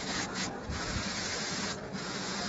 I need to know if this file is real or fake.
fake